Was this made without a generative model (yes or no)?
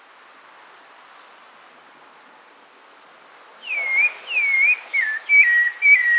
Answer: yes